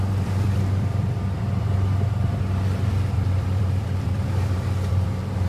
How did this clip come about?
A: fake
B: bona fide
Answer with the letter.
A